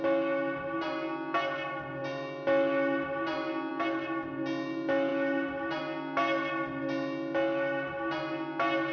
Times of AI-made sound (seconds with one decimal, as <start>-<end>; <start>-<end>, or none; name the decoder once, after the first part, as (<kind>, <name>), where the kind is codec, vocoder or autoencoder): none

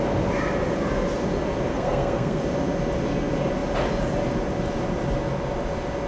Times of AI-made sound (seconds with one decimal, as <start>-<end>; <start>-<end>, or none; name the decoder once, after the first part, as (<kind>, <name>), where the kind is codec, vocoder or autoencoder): 1.7-2.4 (codec, SNAC)

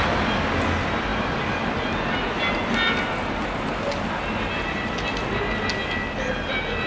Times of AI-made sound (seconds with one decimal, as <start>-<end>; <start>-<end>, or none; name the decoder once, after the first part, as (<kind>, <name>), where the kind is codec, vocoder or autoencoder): none

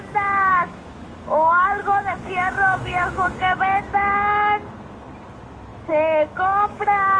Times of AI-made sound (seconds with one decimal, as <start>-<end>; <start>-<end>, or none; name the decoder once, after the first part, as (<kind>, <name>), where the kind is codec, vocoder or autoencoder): 0.5-3.9 (autoencoder, DAC-VAE); 5.7-7.2

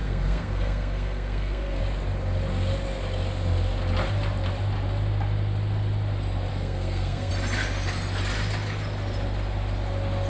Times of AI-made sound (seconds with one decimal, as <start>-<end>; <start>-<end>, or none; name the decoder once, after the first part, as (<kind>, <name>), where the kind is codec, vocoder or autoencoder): 0.0-1.8 (codec, SNAC); 6.5-7.3

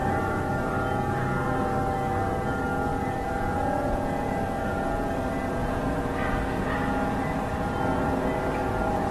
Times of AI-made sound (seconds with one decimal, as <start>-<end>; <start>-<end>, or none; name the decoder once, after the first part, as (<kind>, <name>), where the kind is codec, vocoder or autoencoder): 0.0-0.5 (vocoder, Vocos); 2.9-4.9; 5.6-6.7

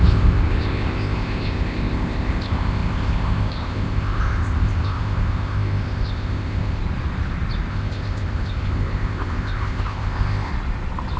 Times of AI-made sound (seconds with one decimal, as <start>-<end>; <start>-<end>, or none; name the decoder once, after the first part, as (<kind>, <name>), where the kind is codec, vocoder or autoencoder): 0.0-6.8 (codec, ZipCodec); 7.7-10.5